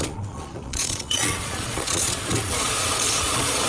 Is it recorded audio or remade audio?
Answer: remade